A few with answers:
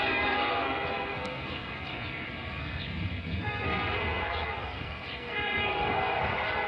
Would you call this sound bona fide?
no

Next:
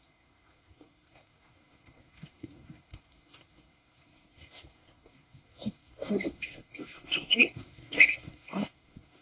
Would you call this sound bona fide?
no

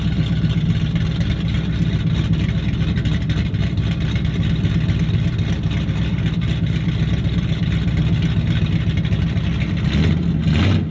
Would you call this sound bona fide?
yes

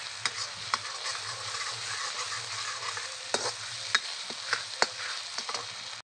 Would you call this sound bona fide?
yes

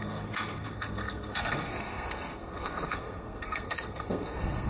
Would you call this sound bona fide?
no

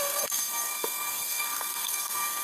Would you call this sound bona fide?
no